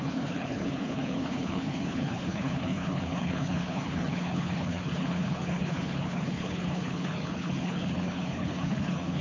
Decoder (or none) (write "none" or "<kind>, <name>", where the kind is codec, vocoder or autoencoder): codec, HILCodec